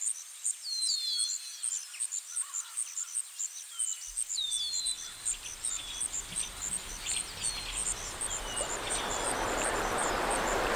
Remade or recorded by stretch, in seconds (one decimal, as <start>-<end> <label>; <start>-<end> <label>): 0.0-10.8 recorded